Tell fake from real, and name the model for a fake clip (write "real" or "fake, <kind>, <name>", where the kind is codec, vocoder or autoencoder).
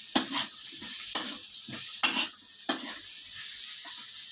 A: real